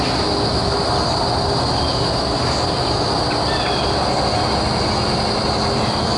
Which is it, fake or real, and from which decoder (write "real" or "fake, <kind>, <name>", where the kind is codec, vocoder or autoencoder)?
real